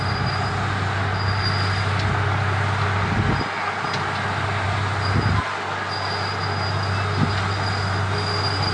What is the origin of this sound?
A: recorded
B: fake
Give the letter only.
A